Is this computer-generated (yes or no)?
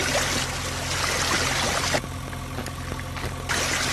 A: no